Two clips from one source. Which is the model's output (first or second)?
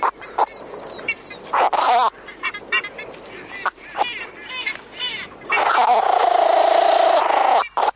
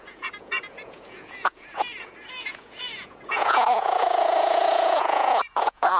second